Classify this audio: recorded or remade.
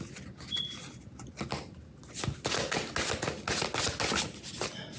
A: recorded